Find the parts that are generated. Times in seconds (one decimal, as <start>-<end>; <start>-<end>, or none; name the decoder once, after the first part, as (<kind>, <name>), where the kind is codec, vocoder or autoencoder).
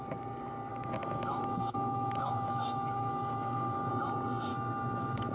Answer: 0.7-3.9 (autoencoder, DAC-VAE); 4.5-5.3